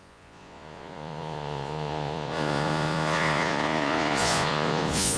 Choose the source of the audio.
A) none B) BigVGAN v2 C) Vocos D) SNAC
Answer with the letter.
C